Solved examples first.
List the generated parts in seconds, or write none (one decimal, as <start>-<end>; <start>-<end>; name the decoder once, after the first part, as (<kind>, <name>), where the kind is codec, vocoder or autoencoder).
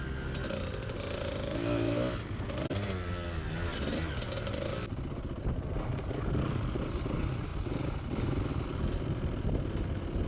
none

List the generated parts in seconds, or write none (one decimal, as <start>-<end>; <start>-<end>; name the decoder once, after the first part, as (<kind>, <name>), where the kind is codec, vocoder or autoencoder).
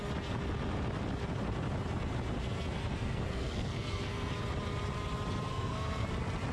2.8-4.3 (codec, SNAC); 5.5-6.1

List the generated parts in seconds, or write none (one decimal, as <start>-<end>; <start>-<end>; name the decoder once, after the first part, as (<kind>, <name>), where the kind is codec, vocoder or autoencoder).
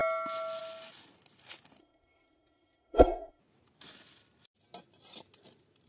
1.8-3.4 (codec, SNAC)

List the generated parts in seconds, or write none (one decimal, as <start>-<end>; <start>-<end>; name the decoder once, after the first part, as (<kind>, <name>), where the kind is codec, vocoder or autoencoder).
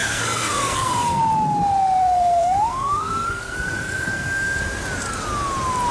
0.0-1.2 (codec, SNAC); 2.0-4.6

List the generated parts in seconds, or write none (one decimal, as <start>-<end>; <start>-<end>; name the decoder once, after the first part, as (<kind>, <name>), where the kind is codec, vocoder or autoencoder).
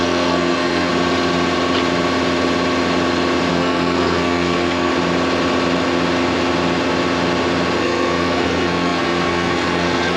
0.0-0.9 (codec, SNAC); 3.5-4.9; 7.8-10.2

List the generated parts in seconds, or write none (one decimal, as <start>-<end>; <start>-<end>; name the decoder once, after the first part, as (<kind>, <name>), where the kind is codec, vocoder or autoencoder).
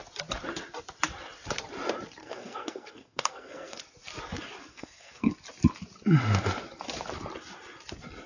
2.2-3.8 (codec, SNAC); 4.7-5.3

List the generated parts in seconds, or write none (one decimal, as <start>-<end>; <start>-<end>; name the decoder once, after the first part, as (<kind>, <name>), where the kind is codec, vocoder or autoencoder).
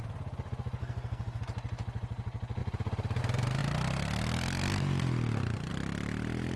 0.8-1.4 (codec, SNAC)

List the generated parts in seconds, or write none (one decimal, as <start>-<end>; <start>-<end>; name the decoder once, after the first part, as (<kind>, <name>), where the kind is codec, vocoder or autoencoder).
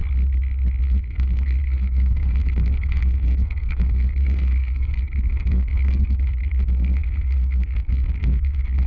0.8-8.9 (codec, SNAC)